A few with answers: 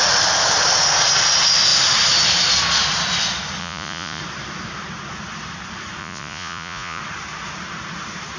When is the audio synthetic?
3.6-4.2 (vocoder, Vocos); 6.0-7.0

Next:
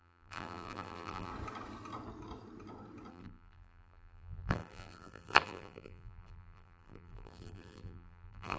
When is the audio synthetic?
0.0-1.3 (vocoder, BigVGAN v2); 3.1-8.6

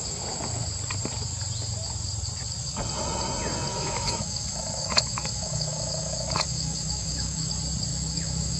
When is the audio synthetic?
3.7-7.5 (autoencoder, DAC-VAE); 7.9-8.6

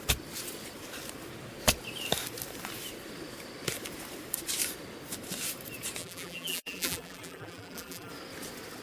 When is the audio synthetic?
6.0-8.1 (vocoder, BigVGAN v2)

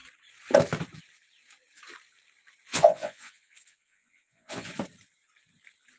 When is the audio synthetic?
2.7-4.7 (vocoder, Vocos)

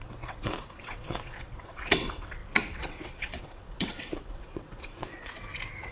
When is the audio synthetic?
0.0-5.9 (vocoder, WaveNeXt)

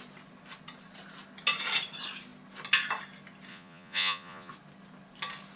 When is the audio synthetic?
3.5-4.5 (vocoder, Vocos)